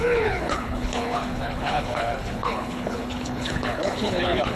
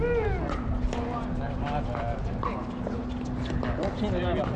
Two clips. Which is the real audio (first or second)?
second